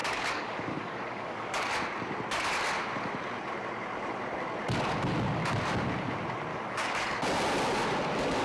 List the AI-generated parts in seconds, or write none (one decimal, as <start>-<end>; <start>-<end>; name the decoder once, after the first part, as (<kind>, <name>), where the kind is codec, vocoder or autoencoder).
0.0-1.7 (codec, DAC); 6.5-7.2